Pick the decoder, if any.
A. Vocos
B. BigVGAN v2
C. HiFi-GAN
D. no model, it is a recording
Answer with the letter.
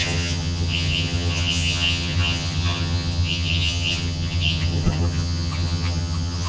C